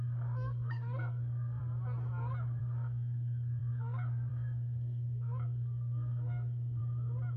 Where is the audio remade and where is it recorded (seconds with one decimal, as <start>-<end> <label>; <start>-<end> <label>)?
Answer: 0.0-1.6 remade; 1.6-2.6 recorded; 2.6-6.8 remade; 6.8-7.4 recorded